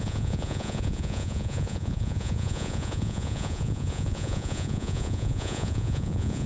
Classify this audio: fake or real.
fake